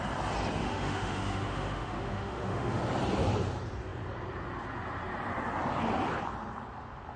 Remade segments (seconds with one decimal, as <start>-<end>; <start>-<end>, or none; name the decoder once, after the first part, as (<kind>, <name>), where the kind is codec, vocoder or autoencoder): 0.6-2.8 (autoencoder, DAC-VAE)